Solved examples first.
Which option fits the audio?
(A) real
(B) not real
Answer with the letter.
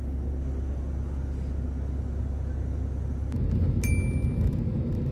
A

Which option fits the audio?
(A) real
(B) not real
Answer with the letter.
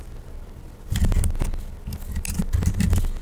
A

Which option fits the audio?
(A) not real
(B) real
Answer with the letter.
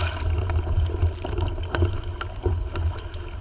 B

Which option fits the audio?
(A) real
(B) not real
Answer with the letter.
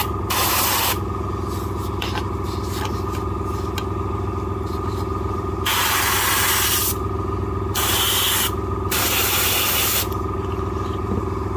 A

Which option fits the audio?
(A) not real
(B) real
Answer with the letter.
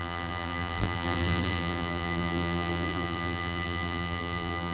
A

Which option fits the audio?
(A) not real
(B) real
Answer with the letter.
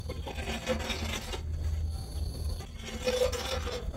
B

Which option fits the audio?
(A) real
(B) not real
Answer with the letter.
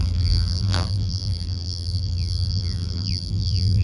B